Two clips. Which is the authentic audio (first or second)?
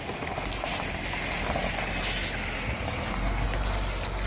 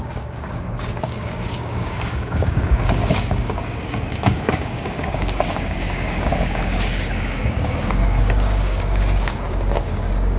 first